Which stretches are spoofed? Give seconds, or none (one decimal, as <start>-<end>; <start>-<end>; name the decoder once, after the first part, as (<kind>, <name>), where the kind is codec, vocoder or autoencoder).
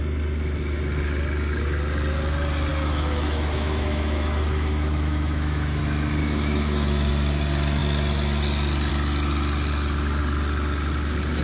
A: 2.7-5.8 (autoencoder, DAC-VAE); 6.2-7.1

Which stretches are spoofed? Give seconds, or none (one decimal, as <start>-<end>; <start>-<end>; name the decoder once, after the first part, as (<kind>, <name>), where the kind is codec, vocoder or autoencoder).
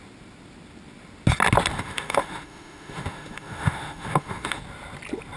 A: 1.7-4.6 (autoencoder, DAC-VAE)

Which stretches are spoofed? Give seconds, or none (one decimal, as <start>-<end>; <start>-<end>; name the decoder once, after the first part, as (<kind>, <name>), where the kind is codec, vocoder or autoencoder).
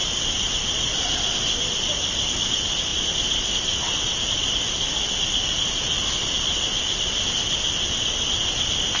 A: none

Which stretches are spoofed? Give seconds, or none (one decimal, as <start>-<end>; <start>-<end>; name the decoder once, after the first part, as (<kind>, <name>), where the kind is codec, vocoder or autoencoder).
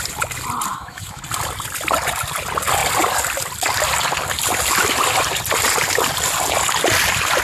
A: 0.7-1.2 (autoencoder, DAC-VAE)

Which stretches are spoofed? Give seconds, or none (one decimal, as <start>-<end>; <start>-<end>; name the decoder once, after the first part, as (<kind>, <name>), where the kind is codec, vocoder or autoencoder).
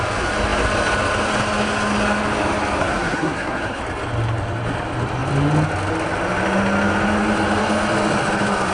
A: 2.8-3.8 (codec, SNAC)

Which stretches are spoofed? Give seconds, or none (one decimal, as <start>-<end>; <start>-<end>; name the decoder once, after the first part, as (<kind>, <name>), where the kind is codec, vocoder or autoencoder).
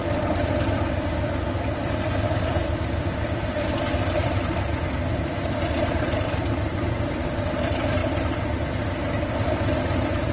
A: 0.0-8.0 (vocoder, BigVGAN v2); 9.0-10.3